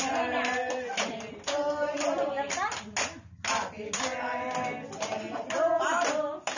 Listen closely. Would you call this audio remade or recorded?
recorded